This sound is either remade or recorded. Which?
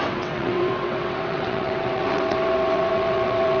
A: remade